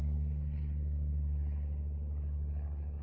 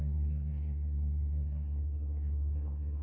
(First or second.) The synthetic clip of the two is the second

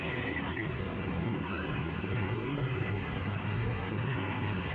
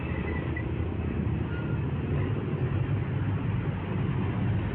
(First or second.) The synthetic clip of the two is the first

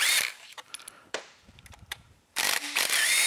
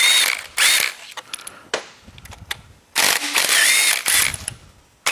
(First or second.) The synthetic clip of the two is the first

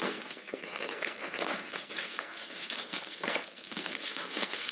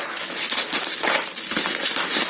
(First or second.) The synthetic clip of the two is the first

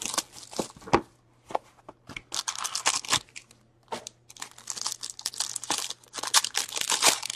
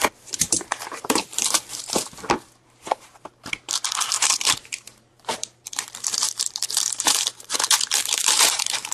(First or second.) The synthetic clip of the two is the second